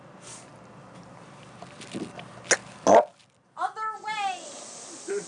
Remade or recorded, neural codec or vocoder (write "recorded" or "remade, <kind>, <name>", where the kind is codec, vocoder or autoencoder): recorded